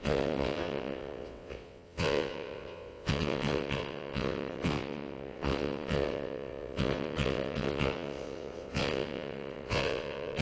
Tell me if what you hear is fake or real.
fake